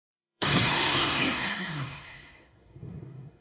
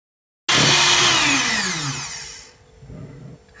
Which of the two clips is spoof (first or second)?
first